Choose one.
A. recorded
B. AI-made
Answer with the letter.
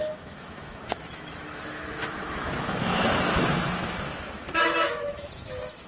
B